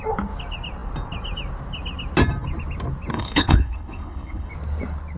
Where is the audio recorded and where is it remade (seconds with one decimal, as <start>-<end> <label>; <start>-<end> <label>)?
0.0-3.1 recorded; 3.1-4.5 remade; 4.5-5.2 recorded